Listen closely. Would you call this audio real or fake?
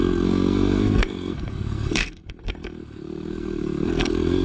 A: fake